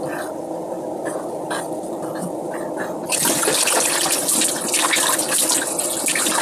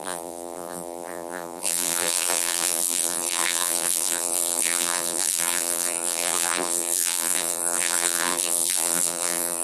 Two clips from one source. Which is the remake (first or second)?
second